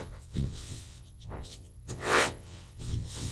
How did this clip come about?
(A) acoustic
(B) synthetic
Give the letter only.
B